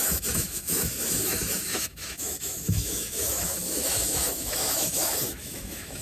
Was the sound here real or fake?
fake